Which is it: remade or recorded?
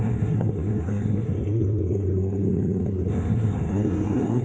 remade